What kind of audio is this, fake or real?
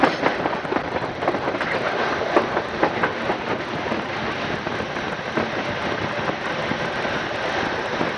real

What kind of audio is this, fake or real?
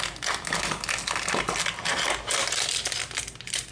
real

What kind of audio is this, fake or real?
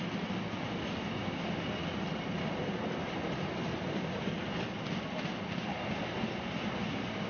real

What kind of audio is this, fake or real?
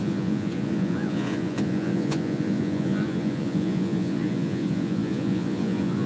fake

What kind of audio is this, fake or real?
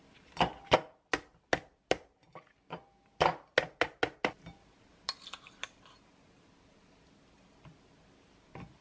real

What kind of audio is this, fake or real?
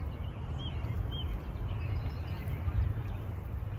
real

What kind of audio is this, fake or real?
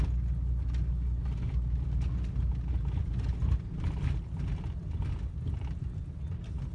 real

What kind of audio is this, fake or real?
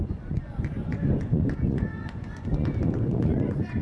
fake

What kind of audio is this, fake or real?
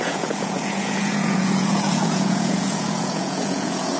fake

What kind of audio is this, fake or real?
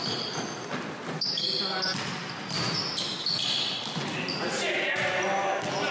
real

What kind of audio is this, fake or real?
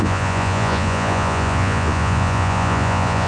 fake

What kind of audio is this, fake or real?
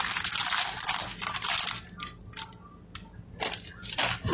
real